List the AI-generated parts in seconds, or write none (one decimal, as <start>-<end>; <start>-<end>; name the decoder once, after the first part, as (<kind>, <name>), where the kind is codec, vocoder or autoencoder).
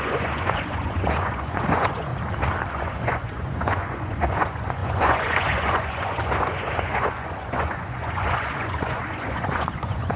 0.0-2.1 (vocoder, Vocos); 2.7-10.2